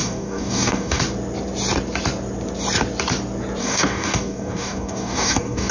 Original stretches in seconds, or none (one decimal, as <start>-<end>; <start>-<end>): 1.0-3.6